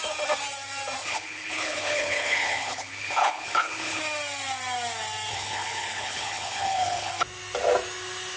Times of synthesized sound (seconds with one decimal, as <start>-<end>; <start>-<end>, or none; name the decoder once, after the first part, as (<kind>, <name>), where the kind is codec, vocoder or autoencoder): 1.0-4.0 (codec, HILCodec); 5.3-7.1